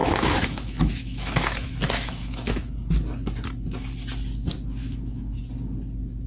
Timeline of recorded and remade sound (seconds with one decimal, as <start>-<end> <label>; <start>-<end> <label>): 0.0-2.7 remade; 2.7-4.8 recorded; 4.8-5.4 remade; 5.4-6.3 recorded